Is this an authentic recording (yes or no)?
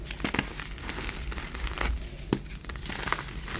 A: yes